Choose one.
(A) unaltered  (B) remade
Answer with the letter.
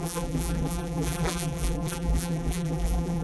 B